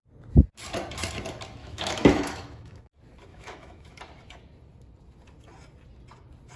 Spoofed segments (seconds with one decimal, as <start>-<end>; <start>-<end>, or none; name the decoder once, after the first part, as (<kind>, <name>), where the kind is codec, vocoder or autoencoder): 1.6-2.9 (autoencoder, DAC-VAE); 3.3-4.0

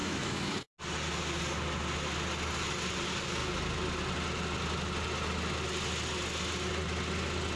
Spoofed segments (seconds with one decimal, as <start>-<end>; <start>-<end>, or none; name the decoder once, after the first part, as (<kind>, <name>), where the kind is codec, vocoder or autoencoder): 0.0-0.7 (autoencoder, DAC-VAE)

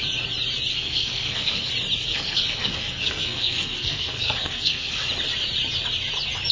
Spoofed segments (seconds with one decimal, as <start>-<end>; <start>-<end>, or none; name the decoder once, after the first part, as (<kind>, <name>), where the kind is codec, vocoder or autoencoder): 0.7-1.7 (codec, SNAC); 2.1-5.0